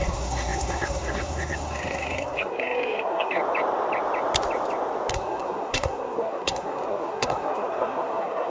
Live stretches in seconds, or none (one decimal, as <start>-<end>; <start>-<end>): 3.4-5.1